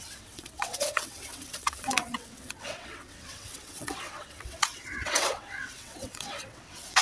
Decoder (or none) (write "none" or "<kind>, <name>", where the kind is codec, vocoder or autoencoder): vocoder, WaveNeXt